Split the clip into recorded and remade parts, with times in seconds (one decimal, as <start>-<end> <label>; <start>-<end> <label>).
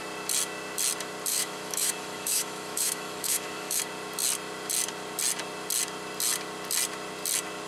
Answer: 0.0-1.3 recorded; 1.3-3.8 remade; 3.8-7.7 recorded